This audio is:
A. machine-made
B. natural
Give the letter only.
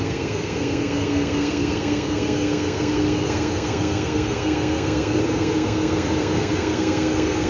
A